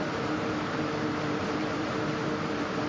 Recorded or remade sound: remade